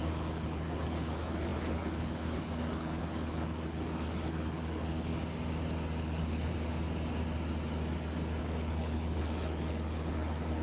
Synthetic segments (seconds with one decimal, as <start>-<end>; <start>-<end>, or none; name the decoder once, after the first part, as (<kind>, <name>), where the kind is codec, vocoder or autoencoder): 0.0-5.1 (codec, HILCodec); 6.0-6.5; 8.4-10.6